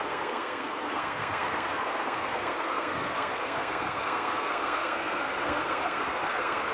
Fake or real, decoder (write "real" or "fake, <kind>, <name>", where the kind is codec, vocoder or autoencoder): fake, codec, SNAC